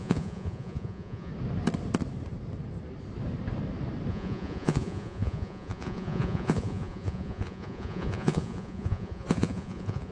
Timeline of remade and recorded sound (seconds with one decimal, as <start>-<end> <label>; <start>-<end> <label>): 0.0-1.3 remade; 1.3-4.1 recorded; 4.1-10.1 remade